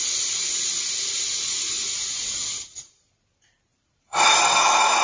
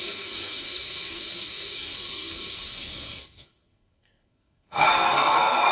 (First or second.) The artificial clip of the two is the second